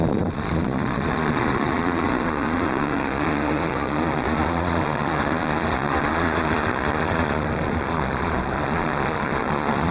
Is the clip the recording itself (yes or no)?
no